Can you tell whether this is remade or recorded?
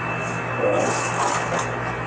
recorded